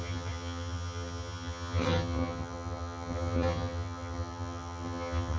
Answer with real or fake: fake